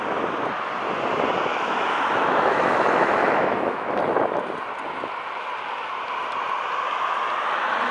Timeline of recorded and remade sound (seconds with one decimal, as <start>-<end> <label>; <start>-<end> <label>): 0.0-1.5 recorded; 1.5-3.9 remade; 3.9-7.9 recorded